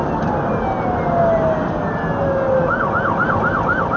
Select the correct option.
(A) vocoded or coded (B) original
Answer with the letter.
B